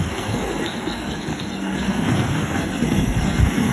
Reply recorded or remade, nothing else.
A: remade